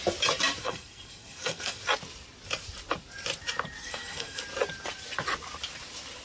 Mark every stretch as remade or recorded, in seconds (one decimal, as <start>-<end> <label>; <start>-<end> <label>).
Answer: 0.0-0.6 recorded; 0.6-1.8 remade; 1.8-3.8 recorded; 3.8-4.4 remade; 4.4-6.2 recorded